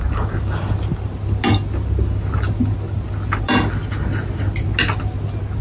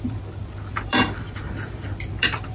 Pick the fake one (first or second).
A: second